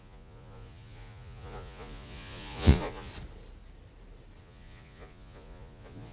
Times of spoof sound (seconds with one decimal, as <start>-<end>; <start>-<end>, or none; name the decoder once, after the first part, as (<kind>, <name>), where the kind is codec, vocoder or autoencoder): 0.0-3.1 (vocoder, Vocos); 4.4-6.1